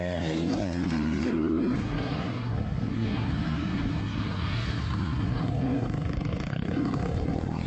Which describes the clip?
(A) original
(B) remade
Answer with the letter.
B